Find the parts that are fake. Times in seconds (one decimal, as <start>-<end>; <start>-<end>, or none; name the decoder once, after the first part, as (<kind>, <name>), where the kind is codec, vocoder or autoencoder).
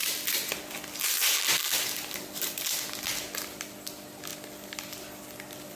none